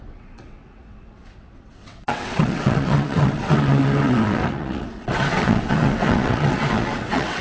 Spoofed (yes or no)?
yes